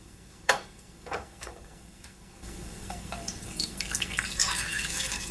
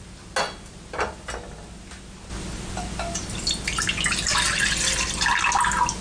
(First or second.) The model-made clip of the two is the first